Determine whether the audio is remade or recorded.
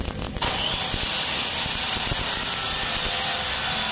recorded